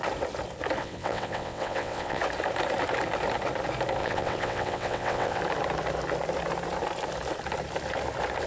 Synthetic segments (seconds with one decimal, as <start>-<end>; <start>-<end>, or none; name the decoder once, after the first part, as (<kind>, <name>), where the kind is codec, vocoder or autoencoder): 0.8-2.2 (vocoder, WaveNeXt); 4.0-5.4